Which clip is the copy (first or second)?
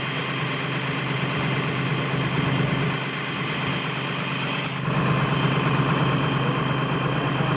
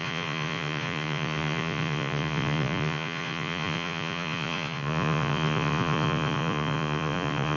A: second